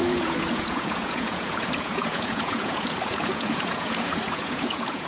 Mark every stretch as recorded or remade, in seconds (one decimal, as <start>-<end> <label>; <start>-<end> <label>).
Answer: 0.0-5.1 remade